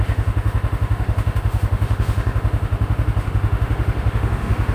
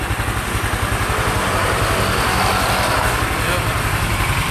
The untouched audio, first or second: second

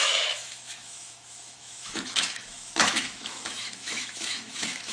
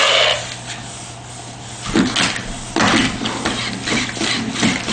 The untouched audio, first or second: second